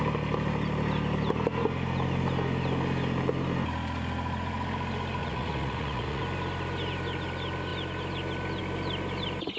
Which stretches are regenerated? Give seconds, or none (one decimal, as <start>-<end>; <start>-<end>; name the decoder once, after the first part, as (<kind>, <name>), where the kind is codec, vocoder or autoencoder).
5.2-6.2 (vocoder, Vocos)